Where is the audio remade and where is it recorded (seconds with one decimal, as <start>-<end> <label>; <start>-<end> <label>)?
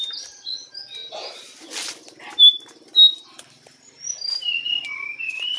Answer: 0.0-5.6 recorded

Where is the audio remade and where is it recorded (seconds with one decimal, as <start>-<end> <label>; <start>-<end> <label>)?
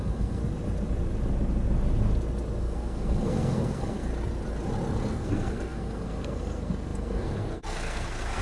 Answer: 0.0-0.4 remade; 0.4-2.6 recorded; 2.6-4.1 remade; 4.1-5.1 recorded; 5.1-8.4 remade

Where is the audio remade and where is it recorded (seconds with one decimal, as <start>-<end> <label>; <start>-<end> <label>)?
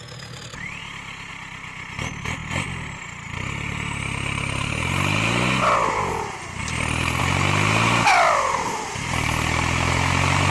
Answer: 0.0-0.8 recorded; 0.8-1.3 remade; 1.3-6.6 recorded; 6.6-7.2 remade; 7.2-10.5 recorded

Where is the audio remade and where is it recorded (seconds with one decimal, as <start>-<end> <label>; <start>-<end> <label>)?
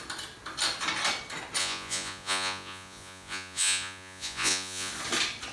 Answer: 0.0-1.6 recorded; 1.6-4.9 remade; 4.9-5.5 recorded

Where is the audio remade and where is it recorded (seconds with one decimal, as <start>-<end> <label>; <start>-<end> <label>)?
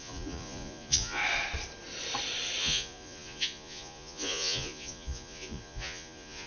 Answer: 0.0-1.2 remade; 1.2-2.6 recorded; 2.6-6.5 remade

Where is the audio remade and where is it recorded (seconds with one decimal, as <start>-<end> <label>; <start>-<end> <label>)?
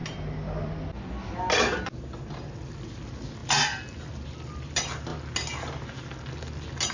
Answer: 0.0-6.9 recorded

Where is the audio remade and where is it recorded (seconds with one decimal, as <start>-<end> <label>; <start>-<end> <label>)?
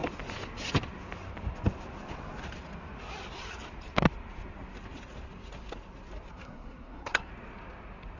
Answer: 0.0-6.3 recorded; 6.3-7.3 remade; 7.3-8.2 recorded